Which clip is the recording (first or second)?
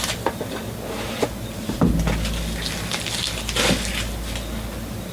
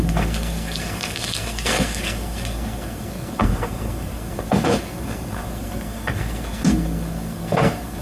first